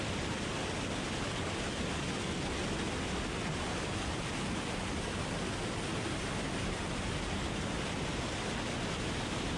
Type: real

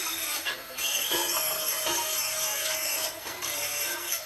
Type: fake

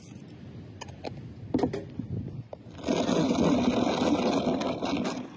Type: real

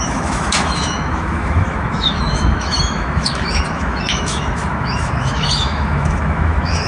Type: fake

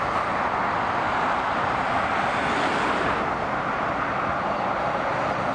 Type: real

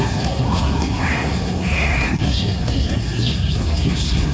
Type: fake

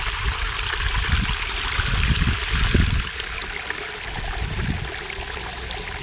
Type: real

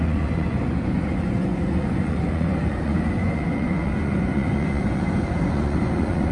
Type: fake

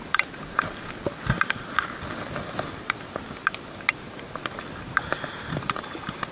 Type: real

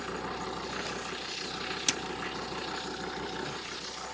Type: real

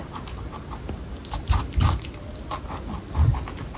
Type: real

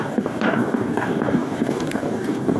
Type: fake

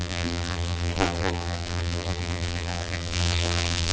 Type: fake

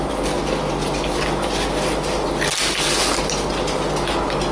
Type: real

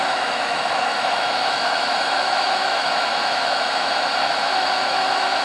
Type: fake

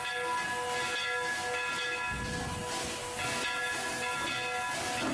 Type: real